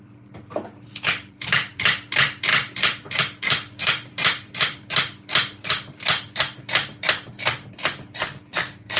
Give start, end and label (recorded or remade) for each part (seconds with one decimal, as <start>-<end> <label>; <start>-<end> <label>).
0.0-2.5 remade; 2.5-3.4 recorded; 3.4-9.0 remade